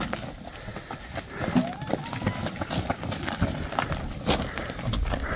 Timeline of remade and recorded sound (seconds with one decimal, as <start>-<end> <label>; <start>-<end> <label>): 0.0-5.4 recorded